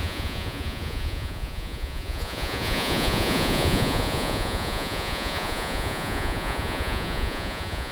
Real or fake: fake